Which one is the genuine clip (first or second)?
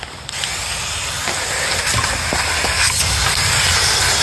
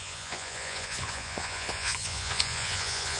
first